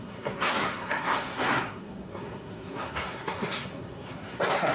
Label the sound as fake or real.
fake